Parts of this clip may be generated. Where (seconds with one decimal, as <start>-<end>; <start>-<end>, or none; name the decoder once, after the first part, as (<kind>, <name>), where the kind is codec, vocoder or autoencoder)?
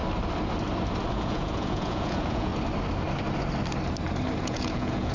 1.1-2.5 (vocoder, Vocos); 4.4-5.1